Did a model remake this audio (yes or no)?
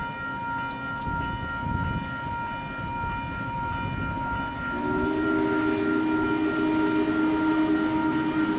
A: no